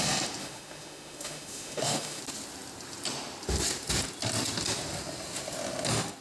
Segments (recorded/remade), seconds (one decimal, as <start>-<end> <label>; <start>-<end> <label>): 0.0-0.4 recorded; 0.4-2.2 remade; 2.2-6.2 recorded